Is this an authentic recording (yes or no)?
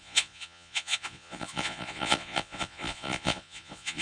no